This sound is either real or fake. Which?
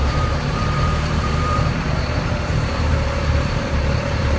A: fake